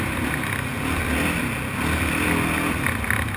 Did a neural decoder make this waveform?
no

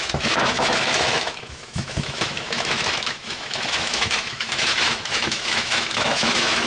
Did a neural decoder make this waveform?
yes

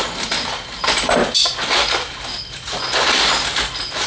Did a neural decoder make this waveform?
no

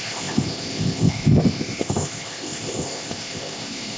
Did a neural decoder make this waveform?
yes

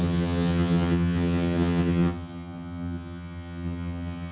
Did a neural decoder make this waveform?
yes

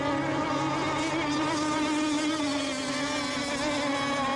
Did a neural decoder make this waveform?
no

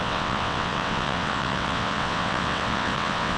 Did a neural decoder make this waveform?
yes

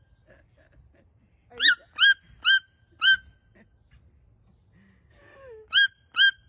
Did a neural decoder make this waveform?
no